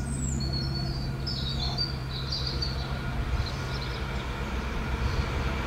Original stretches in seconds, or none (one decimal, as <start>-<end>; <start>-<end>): 0.0-5.7